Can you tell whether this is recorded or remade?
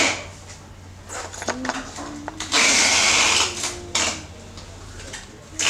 recorded